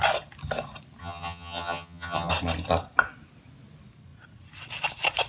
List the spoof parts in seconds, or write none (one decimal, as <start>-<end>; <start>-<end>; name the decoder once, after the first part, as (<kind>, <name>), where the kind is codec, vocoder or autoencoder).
1.0-2.3 (vocoder, HiFi-GAN)